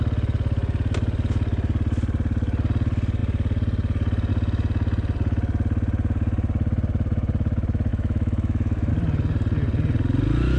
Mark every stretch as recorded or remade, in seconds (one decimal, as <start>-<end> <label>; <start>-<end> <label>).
0.0-7.9 recorded; 7.9-8.9 remade; 8.9-10.6 recorded